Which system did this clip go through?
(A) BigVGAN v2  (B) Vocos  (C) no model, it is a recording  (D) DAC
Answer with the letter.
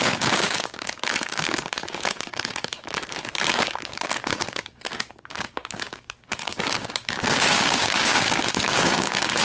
D